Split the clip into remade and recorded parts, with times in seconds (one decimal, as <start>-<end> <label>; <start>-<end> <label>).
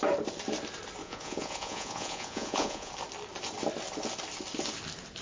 0.0-1.0 recorded; 1.0-2.9 remade; 2.9-5.2 recorded